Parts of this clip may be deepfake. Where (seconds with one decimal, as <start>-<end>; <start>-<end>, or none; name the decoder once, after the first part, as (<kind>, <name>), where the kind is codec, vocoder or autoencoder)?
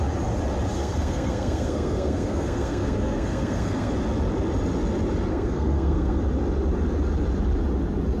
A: 0.8-3.9 (codec, SNAC); 5.3-6.2